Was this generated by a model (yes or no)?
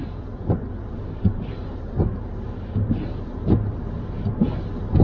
no